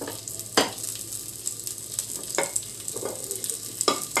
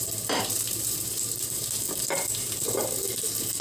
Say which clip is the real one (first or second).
first